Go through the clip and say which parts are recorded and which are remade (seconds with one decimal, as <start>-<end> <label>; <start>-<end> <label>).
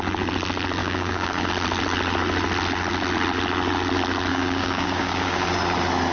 0.0-0.8 recorded; 0.8-1.5 remade; 1.5-4.3 recorded; 4.3-5.5 remade; 5.5-6.1 recorded